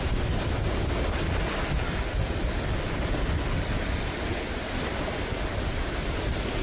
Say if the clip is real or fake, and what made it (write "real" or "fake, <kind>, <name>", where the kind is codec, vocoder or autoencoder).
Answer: real